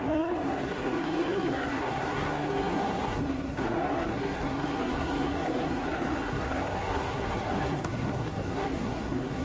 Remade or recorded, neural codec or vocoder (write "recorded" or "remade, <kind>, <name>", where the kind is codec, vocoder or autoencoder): remade, codec, SNAC